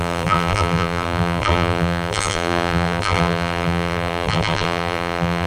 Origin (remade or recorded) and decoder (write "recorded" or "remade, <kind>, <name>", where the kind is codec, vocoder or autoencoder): remade, vocoder, BigVGAN v2